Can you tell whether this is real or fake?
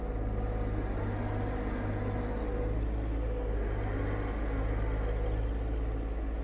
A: real